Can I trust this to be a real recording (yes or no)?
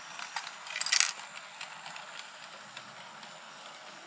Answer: yes